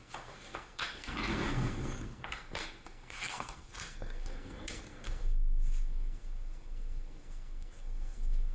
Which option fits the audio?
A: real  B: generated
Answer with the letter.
B